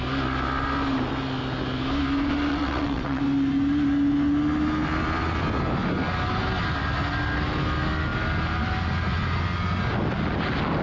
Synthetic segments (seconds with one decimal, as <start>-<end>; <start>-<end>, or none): 2.5-3.2